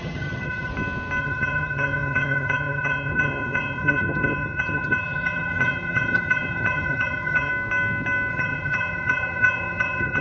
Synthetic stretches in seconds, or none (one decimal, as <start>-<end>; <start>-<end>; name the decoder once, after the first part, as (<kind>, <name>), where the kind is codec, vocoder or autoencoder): 0.0-0.7 (vocoder, HiFi-GAN); 1.2-7.5; 8.3-10.2